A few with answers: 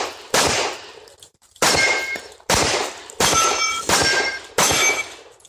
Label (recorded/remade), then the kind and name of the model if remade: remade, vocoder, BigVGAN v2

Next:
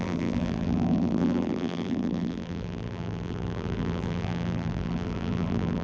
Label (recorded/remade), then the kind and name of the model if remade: remade, vocoder, BigVGAN v2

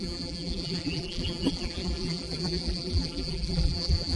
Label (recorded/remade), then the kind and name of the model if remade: remade, vocoder, BigVGAN v2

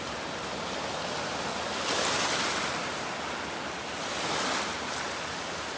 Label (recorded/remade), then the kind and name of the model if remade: recorded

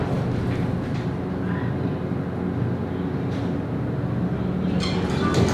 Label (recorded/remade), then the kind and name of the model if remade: recorded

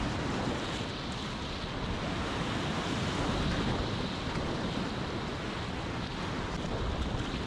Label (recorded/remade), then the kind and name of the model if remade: recorded